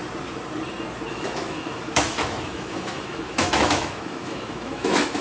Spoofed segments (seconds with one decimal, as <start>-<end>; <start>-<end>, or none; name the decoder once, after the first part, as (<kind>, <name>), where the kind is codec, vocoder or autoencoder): 1.1-5.2 (autoencoder, DAC-VAE)